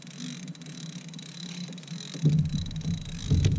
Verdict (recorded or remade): recorded